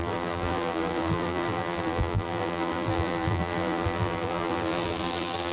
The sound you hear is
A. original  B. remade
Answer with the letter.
B